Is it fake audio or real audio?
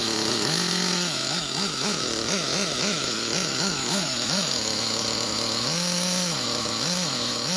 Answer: fake